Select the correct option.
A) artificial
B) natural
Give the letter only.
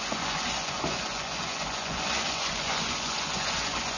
A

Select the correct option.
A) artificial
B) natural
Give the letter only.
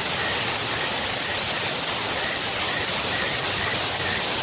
B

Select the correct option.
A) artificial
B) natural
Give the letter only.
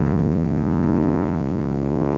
A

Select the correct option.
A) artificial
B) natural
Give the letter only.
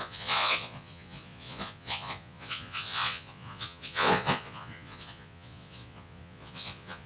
A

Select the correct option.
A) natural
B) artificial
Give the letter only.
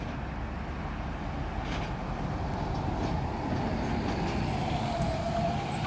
A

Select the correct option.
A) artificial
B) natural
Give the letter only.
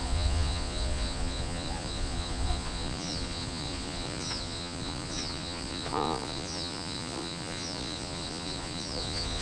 A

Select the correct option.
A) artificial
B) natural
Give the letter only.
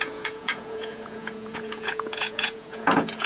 A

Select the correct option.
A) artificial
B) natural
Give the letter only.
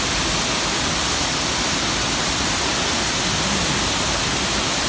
B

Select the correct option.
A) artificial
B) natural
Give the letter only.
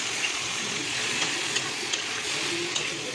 A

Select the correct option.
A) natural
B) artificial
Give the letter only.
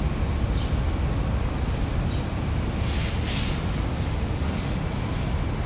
A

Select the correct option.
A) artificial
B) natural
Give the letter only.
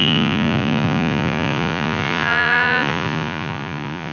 A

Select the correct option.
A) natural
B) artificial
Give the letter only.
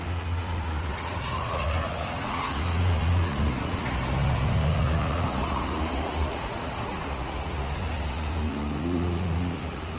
B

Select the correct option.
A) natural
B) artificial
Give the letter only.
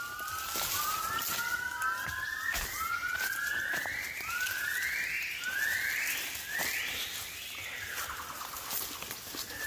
A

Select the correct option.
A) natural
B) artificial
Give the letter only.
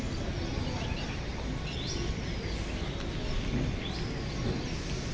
A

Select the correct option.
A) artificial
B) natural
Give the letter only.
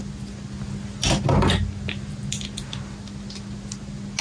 B